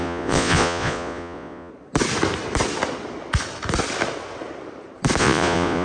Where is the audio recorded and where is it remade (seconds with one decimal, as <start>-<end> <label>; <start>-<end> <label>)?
0.0-1.7 remade; 1.7-5.2 recorded; 5.2-5.8 remade